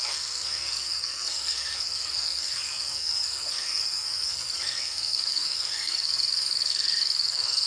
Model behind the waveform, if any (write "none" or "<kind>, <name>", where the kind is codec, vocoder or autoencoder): codec, SNAC